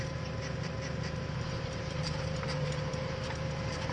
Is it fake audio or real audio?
fake